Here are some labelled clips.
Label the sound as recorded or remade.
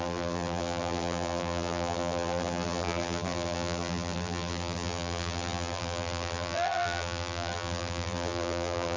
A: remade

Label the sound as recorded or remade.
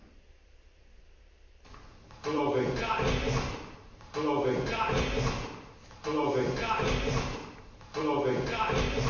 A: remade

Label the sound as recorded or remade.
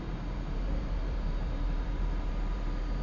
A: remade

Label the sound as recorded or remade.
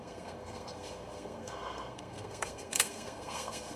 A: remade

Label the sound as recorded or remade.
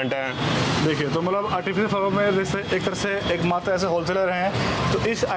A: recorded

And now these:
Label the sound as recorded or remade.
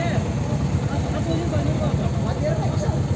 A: recorded